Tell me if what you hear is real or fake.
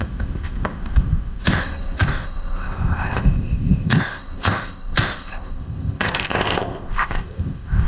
fake